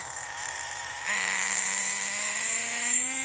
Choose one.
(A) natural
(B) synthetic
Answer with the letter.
B